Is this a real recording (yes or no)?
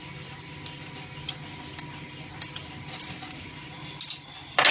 yes